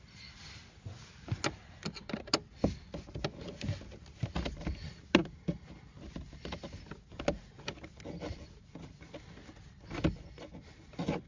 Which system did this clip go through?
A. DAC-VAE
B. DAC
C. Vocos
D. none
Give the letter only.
D